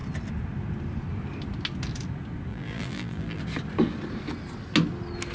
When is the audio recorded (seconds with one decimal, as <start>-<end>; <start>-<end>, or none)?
0.0-2.5; 3.4-5.3